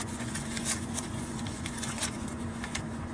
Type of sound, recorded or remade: remade